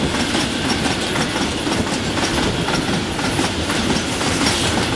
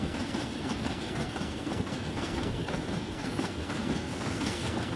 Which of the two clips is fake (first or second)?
second